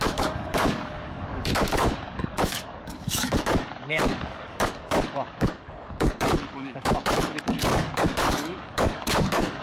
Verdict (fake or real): fake